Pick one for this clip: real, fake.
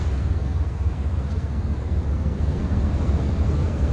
fake